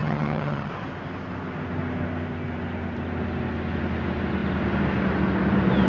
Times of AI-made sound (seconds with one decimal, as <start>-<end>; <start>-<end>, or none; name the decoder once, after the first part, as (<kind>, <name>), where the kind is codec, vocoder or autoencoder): 0.0-0.7 (vocoder, HiFi-GAN)